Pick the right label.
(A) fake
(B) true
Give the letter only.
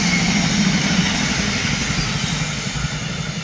B